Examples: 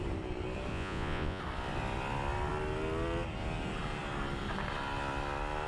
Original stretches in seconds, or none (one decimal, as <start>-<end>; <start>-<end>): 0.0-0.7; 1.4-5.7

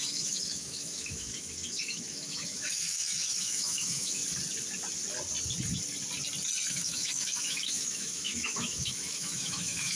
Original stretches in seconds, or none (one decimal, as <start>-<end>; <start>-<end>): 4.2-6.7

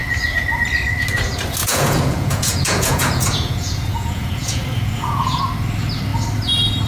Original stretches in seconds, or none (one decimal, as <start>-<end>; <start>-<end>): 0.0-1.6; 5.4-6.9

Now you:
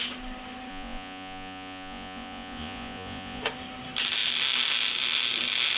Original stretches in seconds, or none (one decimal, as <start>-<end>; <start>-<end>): 0.0-0.7; 3.4-5.8

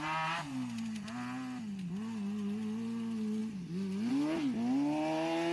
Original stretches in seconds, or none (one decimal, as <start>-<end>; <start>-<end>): 0.0-5.5

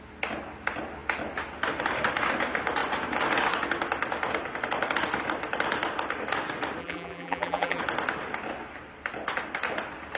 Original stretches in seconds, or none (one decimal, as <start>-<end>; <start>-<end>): 0.0-6.8; 7.8-10.2

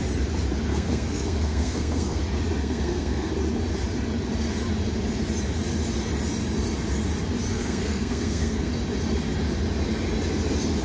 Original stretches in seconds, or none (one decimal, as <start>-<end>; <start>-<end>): 0.0-0.7; 2.2-2.6; 3.3-7.5; 8.7-10.8

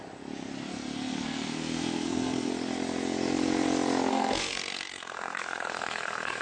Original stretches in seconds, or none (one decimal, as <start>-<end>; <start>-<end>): 0.0-0.7; 2.5-4.1